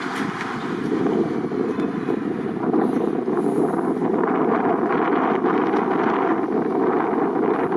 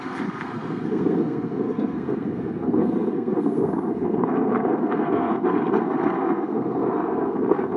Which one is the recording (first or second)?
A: first